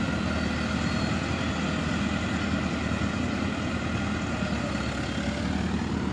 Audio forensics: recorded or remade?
recorded